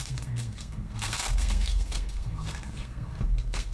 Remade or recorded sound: remade